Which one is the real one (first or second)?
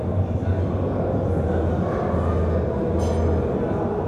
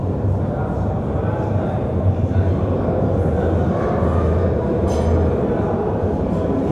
first